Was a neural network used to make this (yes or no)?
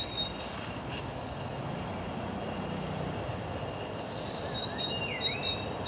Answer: no